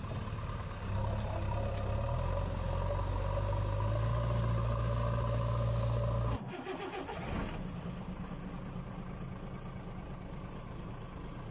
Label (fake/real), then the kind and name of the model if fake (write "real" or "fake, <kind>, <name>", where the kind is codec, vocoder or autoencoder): real